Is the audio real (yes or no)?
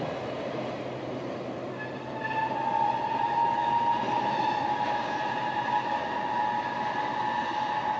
yes